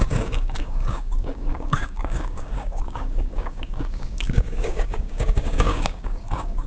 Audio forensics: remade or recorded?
remade